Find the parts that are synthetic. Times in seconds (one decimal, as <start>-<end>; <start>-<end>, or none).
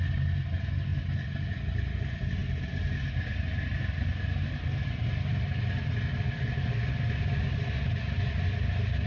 none